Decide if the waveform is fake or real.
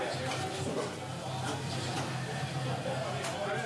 real